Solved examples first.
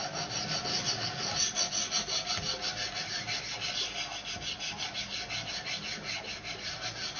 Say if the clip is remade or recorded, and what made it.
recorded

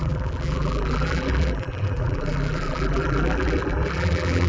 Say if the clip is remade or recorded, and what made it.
remade, vocoder, BigVGAN v2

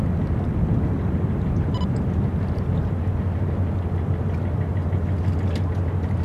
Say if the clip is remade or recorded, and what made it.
recorded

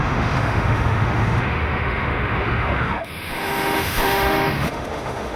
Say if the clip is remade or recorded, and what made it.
remade, autoencoder, DAC-VAE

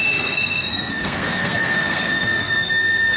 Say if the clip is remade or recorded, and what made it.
remade, codec, SNAC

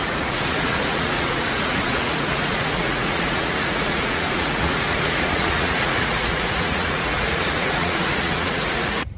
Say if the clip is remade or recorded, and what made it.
remade, vocoder, Vocos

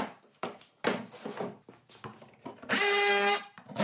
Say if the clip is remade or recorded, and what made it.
recorded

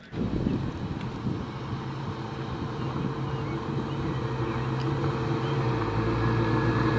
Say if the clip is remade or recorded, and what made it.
recorded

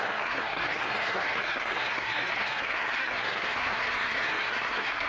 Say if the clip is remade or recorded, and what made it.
remade, codec, SNAC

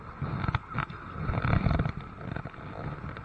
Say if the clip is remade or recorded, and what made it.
recorded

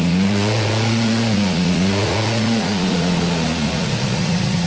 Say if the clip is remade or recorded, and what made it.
remade, vocoder, Vocos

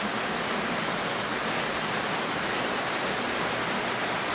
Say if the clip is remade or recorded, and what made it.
recorded